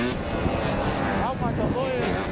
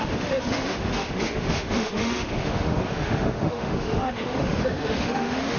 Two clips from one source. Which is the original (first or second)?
first